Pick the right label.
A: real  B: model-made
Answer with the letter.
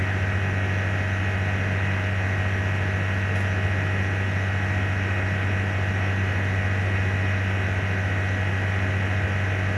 A